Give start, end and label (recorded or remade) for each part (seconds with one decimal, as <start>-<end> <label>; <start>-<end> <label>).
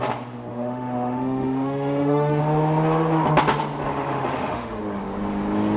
0.0-0.5 recorded; 0.5-2.4 remade; 2.4-3.9 recorded; 3.9-4.8 remade; 4.8-5.8 recorded